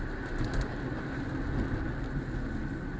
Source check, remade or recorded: recorded